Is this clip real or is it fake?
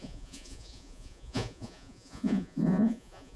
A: fake